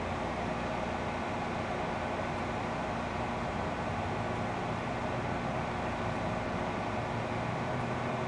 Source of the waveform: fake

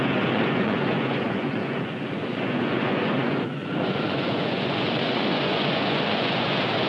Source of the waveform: fake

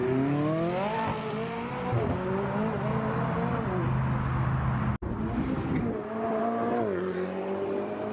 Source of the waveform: real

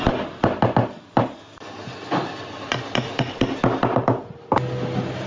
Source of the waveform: real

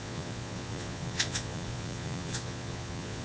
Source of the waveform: fake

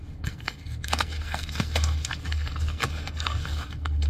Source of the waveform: fake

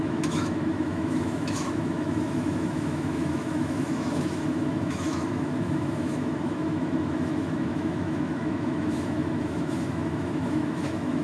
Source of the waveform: fake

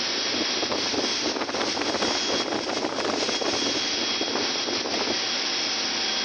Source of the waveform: real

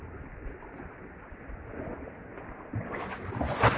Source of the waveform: real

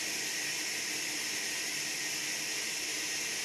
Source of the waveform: real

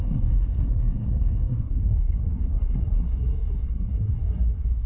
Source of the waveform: fake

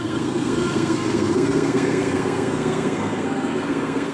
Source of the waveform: fake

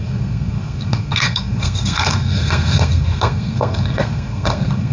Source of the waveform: fake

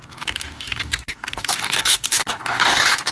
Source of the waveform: fake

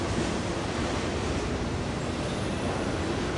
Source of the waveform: real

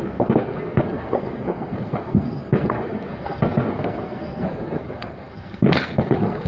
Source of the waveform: fake